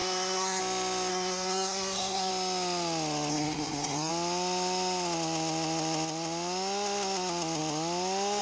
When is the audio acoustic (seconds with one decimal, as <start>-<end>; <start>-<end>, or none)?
0.6-1.1; 2.3-3.3; 4.1-8.4